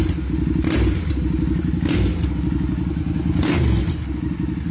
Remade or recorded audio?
recorded